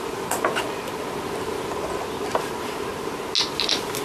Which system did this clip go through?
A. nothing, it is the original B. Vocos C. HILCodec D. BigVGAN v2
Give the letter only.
A